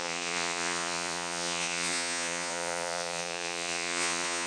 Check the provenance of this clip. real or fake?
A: fake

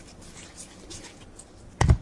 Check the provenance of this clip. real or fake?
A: real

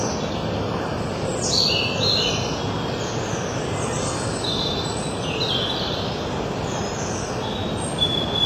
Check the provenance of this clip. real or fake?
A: real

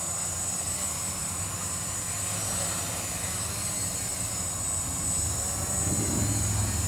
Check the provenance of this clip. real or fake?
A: real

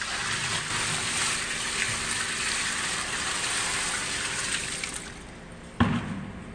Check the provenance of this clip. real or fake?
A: real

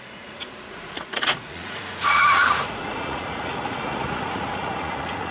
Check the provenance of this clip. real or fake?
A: fake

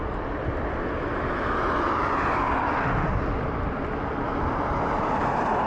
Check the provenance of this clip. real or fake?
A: real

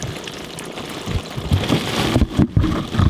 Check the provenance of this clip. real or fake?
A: real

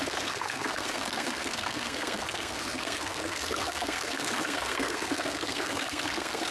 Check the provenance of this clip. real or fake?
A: fake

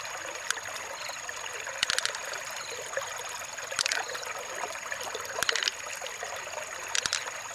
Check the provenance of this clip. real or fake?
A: real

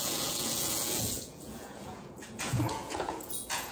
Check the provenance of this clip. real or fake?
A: fake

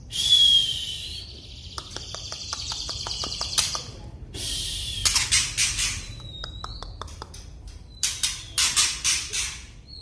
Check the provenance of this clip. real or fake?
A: fake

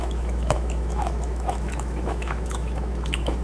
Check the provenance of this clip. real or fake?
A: fake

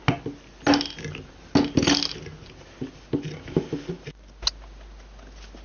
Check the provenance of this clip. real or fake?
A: real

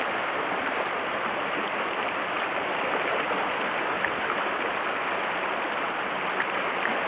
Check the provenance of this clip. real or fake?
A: real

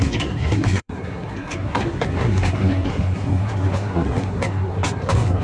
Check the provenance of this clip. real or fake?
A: fake